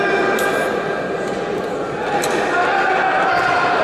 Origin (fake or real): real